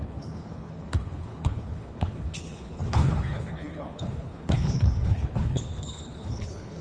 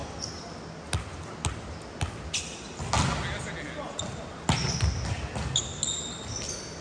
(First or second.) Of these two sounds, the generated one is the first